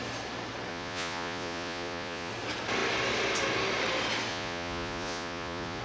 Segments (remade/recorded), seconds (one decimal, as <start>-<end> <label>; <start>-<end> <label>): 0.0-0.7 recorded; 0.7-2.3 remade; 2.3-4.3 recorded; 4.3-5.8 remade